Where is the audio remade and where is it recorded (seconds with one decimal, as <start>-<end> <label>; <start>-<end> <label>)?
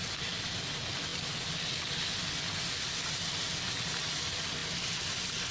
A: 0.0-5.5 recorded